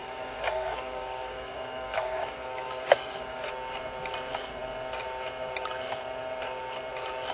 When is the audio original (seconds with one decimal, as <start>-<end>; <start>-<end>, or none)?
3.5-7.3